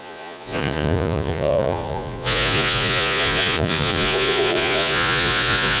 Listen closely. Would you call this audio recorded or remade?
remade